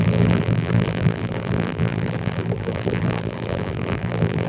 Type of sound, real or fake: fake